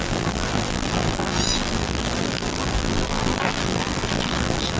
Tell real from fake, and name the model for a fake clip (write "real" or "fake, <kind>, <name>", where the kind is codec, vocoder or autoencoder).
fake, vocoder, BigVGAN v2